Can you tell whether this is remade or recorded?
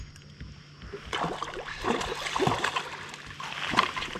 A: recorded